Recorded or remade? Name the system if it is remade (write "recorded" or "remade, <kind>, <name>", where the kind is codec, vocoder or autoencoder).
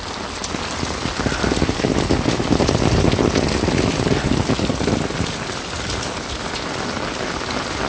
recorded